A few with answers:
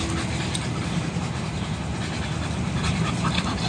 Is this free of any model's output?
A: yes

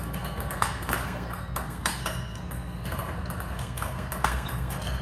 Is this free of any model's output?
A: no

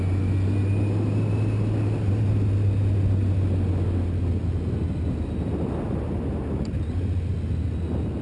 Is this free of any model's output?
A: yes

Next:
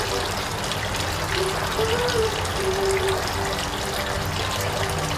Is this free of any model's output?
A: yes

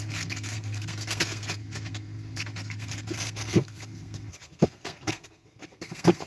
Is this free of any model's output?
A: no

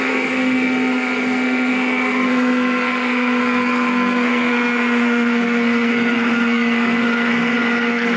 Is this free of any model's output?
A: no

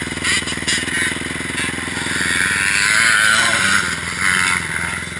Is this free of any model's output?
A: yes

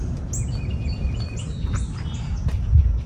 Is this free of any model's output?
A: yes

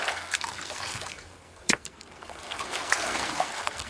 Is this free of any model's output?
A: no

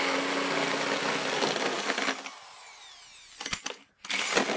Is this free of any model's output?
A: yes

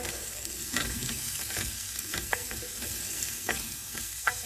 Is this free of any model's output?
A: no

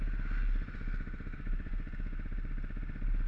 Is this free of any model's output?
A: yes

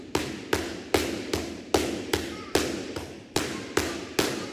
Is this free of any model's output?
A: yes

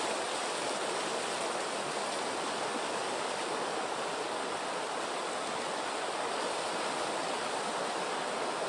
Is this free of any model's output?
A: yes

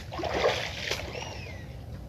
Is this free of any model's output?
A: yes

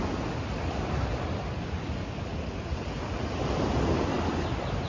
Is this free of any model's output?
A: yes